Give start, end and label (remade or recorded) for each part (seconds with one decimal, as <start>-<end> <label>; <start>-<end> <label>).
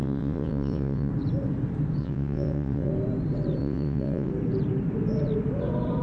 0.0-1.1 remade; 1.1-2.0 recorded; 2.0-2.9 remade; 2.9-3.6 recorded; 3.6-4.3 remade; 4.3-6.0 recorded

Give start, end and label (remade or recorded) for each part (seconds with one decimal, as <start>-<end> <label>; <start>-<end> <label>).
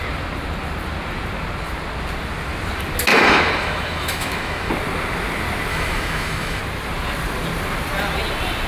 0.0-3.1 recorded; 3.1-4.7 remade; 4.7-5.7 recorded; 5.7-6.6 remade; 6.6-8.7 recorded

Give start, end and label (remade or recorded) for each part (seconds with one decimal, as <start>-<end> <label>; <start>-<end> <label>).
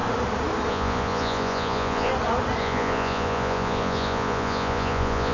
0.0-0.7 recorded; 0.7-2.1 remade; 2.1-2.6 recorded; 2.6-5.3 remade